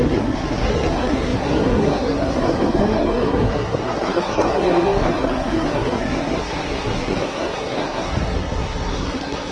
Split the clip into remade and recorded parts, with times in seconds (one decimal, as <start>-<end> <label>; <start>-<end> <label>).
0.0-9.5 remade